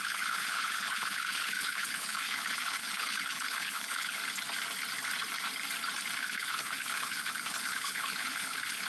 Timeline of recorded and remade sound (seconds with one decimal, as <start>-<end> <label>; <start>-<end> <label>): 0.0-4.2 remade; 4.2-6.2 recorded; 6.2-8.9 remade